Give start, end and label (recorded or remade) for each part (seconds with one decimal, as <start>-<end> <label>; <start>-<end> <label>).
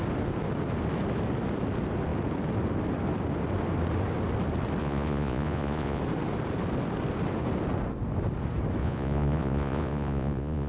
0.0-4.8 recorded; 4.8-6.0 remade; 6.0-8.8 recorded; 8.8-10.7 remade